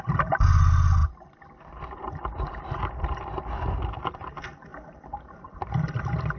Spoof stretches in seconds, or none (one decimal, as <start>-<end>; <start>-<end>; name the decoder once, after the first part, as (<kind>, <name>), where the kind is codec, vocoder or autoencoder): none

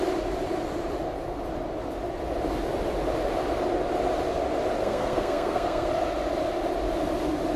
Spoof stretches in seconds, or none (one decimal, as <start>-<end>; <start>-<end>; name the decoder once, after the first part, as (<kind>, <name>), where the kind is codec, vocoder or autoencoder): 4.8-5.9 (codec, SNAC)

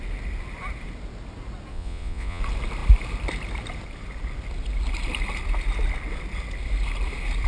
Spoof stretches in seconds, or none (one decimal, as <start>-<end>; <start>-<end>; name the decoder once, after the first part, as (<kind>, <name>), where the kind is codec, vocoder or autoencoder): 1.7-2.4 (vocoder, Vocos)

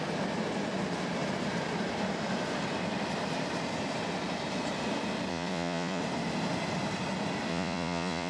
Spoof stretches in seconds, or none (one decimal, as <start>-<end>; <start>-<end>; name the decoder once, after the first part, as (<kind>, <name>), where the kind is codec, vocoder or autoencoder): 5.3-6.0 (vocoder, Vocos); 7.5-8.3

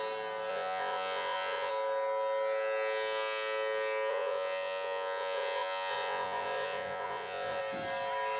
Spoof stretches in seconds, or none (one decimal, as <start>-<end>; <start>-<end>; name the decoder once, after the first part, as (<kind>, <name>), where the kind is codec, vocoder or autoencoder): 0.5-1.7 (vocoder, Vocos); 4.1-7.6

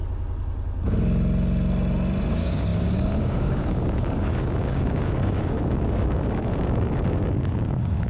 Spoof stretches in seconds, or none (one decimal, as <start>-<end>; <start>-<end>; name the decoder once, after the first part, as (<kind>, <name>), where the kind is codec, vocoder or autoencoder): 2.3-8.1 (codec, DAC)